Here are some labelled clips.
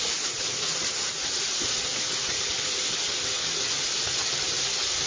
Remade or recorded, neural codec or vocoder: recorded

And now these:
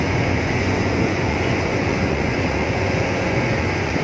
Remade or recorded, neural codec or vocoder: remade, vocoder, Vocos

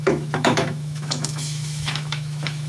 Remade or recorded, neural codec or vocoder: remade, autoencoder, DAC-VAE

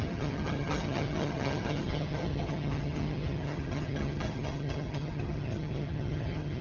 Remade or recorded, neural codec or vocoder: remade, vocoder, HiFi-GAN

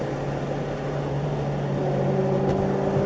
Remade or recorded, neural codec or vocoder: recorded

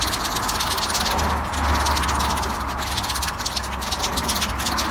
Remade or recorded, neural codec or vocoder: recorded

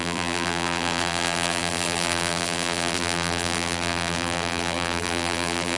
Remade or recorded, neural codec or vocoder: remade, vocoder, BigVGAN v2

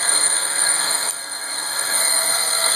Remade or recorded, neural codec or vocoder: remade, codec, SNAC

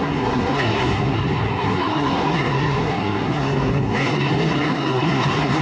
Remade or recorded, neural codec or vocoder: remade, codec, SNAC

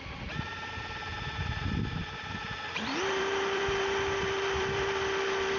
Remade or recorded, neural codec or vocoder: remade, vocoder, BigVGAN v2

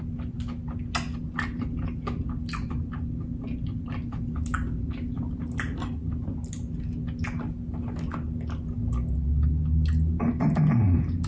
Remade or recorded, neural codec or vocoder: recorded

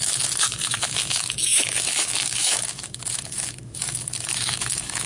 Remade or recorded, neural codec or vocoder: remade, autoencoder, DAC-VAE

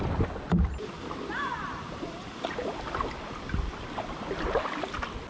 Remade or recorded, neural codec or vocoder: recorded